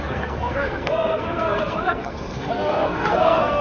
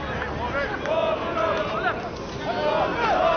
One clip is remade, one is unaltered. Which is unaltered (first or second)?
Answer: second